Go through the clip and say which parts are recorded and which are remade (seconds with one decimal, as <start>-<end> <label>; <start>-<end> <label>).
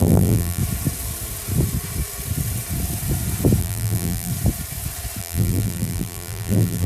0.0-0.6 remade; 0.6-3.6 recorded; 3.6-4.3 remade; 4.3-5.2 recorded; 5.2-6.9 remade